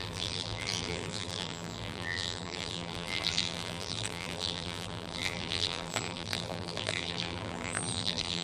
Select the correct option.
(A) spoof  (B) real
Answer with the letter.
A